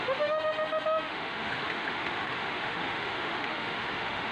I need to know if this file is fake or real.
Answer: fake